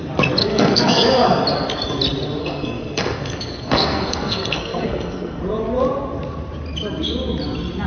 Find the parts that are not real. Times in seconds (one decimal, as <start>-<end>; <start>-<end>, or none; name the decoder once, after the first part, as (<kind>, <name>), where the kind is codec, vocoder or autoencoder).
0.4-1.4 (codec, SNAC); 2.4-5.4